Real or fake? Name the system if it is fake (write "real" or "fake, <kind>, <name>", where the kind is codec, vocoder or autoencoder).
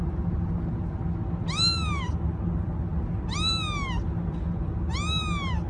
real